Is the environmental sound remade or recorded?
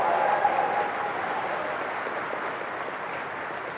recorded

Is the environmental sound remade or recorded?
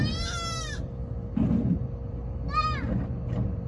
recorded